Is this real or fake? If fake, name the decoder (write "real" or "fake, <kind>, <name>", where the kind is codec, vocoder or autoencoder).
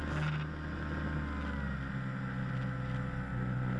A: real